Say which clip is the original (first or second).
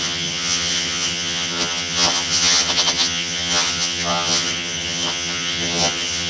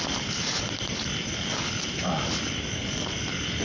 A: second